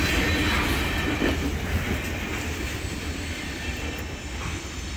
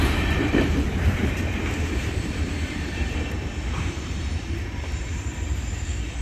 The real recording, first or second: first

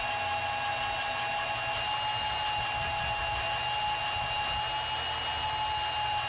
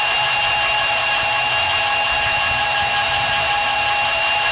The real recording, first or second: first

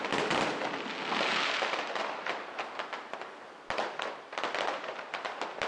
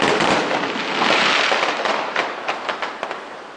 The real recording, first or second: first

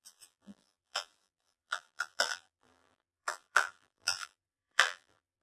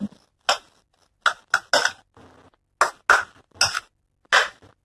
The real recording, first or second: second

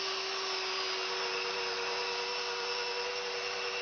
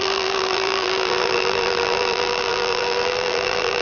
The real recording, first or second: first